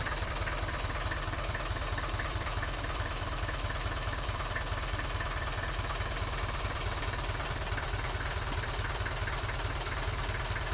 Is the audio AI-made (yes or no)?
yes